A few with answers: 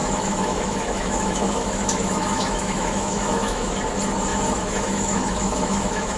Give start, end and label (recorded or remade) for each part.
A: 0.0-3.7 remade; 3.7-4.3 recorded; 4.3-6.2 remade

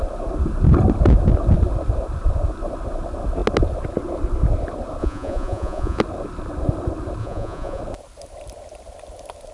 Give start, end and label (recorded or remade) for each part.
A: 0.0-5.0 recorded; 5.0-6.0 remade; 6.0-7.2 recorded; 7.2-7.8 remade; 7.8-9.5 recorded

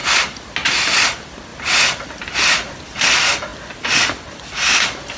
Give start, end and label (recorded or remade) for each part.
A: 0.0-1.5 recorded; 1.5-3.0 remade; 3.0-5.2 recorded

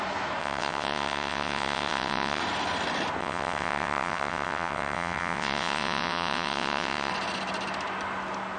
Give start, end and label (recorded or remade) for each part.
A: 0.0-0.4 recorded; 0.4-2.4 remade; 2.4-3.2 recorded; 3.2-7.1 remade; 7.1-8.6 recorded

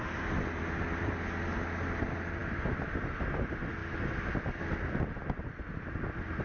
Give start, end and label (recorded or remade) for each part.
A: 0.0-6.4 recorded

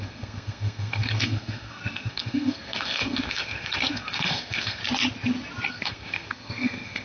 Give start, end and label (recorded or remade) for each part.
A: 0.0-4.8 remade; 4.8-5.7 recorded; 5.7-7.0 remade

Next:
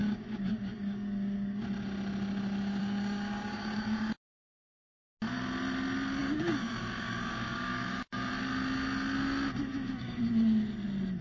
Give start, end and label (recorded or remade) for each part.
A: 0.0-1.6 remade; 1.6-2.8 recorded; 2.8-4.5 remade; 4.5-6.2 recorded; 6.2-8.3 remade; 8.3-9.7 recorded; 9.7-10.2 remade; 10.2-11.2 recorded